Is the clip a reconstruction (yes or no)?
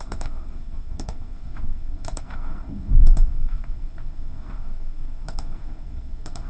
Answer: yes